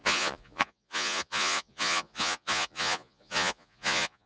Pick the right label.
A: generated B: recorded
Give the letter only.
A